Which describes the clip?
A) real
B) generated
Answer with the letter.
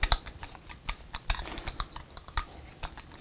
A